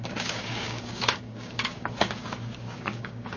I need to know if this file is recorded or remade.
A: remade